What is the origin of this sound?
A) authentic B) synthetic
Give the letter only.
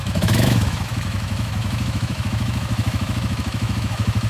B